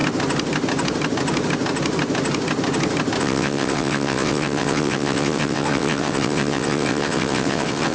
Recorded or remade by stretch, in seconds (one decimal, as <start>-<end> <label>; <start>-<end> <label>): 0.0-3.2 recorded; 3.2-7.9 remade